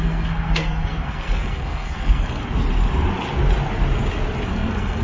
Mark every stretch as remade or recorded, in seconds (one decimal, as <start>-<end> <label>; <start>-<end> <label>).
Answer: 0.0-2.4 remade; 2.4-4.5 recorded; 4.5-5.0 remade